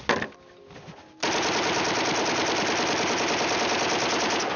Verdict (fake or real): real